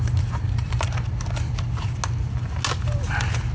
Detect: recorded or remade recorded